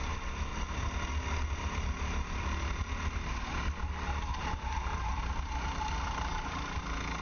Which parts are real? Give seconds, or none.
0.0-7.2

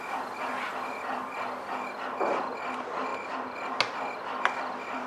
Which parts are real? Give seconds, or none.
0.0-5.1

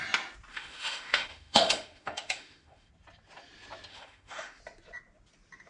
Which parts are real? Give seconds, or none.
0.0-0.5; 2.9-3.9; 4.6-5.7